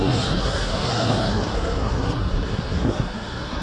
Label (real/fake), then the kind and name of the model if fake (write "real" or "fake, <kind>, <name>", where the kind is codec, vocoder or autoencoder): fake, codec, SNAC